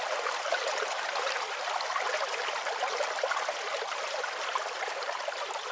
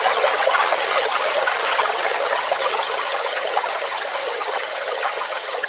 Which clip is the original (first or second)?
first